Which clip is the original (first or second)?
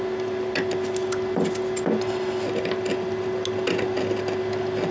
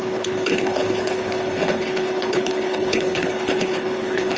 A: first